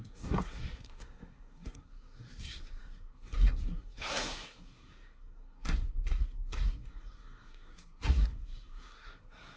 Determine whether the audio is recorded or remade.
remade